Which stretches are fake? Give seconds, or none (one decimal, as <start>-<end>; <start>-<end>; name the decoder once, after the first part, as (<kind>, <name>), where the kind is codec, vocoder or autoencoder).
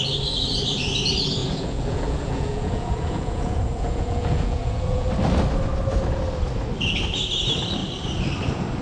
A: 1.4-5.1 (vocoder, Vocos)